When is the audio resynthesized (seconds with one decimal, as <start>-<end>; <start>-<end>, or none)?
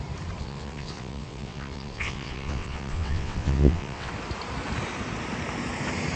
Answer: 0.4-4.1